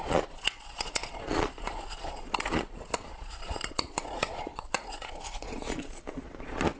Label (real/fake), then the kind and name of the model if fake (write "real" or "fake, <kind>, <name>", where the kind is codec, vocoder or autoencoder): fake, vocoder, Vocos